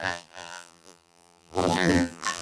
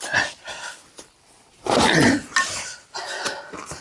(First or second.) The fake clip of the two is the first